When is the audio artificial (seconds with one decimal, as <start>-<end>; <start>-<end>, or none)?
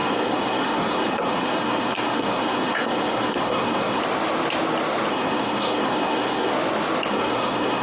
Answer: 0.0-4.0; 5.1-6.5; 7.1-7.8